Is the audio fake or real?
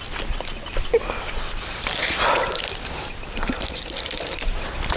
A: real